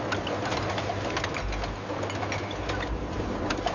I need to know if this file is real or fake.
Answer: real